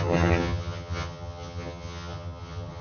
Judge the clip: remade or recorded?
remade